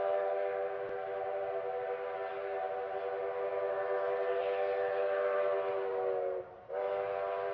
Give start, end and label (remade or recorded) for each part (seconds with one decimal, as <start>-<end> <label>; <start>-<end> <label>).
0.0-7.5 recorded